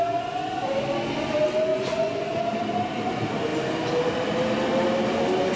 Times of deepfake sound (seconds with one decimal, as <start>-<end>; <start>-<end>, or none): 1.7-2.3